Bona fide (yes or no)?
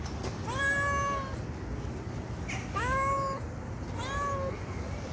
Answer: yes